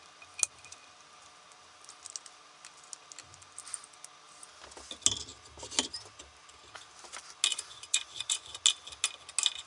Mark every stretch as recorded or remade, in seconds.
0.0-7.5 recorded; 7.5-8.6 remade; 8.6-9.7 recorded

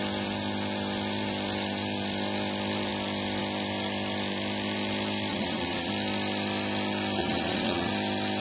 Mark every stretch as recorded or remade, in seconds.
0.0-5.3 recorded; 5.3-5.9 remade; 5.9-7.2 recorded; 7.2-7.9 remade; 7.9-8.4 recorded

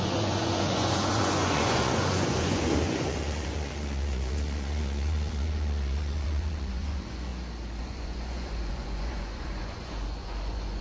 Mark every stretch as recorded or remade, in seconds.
0.0-7.3 remade; 7.3-7.8 recorded; 7.8-10.8 remade

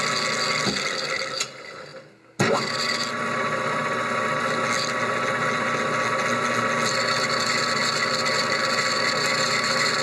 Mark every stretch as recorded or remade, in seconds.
0.0-10.0 recorded

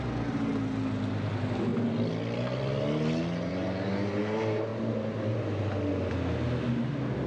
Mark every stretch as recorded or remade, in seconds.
0.0-7.3 recorded

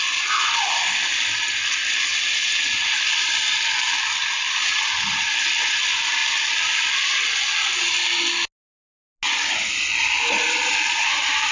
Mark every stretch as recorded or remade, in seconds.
0.0-11.5 recorded